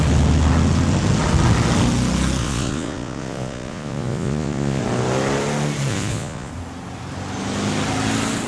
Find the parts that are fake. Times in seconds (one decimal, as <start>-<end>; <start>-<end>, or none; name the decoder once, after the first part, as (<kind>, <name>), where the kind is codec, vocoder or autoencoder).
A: 2.4-4.8 (vocoder, Vocos); 5.9-6.5